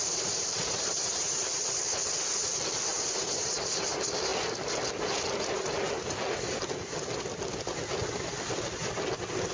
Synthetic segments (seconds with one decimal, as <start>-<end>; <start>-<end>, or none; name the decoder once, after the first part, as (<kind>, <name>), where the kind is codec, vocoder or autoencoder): 0.0-1.5 (vocoder, BigVGAN v2); 2.9-3.9